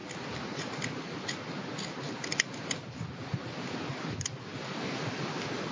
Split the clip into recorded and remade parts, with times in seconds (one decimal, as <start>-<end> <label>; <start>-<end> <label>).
0.0-5.7 recorded